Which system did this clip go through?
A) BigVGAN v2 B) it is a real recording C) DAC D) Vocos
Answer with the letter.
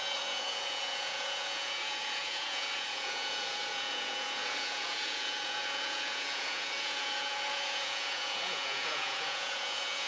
D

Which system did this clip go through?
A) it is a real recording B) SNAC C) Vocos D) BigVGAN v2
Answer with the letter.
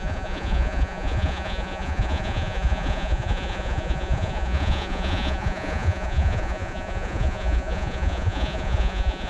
C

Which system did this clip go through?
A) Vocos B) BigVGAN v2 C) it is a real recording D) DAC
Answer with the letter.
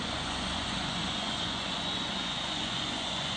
A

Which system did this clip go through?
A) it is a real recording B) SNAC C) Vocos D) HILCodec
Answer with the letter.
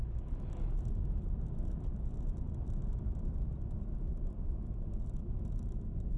A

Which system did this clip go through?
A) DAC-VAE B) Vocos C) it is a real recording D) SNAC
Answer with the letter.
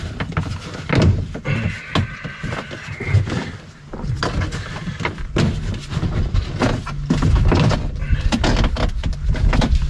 C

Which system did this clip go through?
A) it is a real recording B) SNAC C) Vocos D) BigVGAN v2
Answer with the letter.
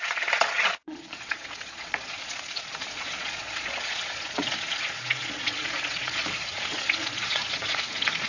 C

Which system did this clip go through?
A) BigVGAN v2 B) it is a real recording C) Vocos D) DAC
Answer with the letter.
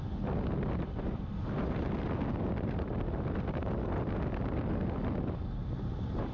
B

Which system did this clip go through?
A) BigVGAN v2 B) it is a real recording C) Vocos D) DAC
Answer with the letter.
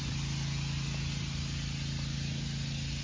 B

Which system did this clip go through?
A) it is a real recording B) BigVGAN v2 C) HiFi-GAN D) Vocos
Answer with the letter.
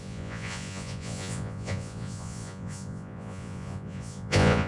D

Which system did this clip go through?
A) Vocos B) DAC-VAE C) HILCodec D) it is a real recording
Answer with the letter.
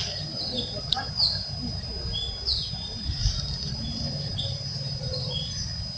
D